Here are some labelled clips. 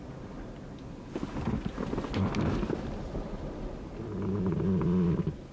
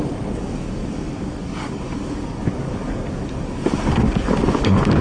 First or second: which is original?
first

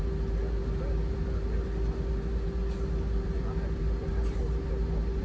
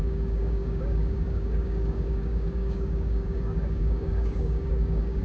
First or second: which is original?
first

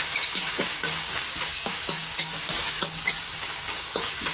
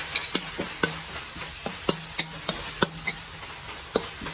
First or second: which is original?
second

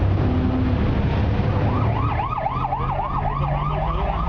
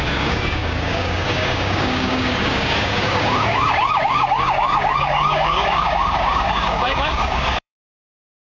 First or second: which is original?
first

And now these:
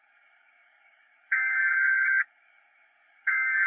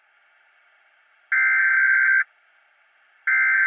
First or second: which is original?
second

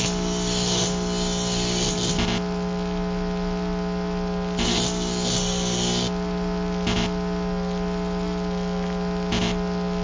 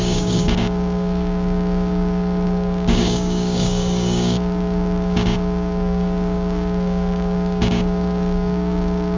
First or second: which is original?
first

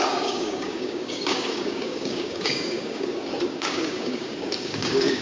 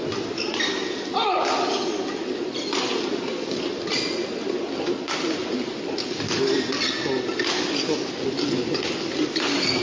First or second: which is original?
second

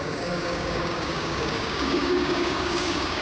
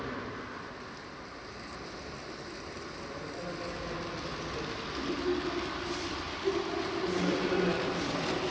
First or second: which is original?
second